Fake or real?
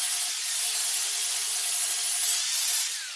real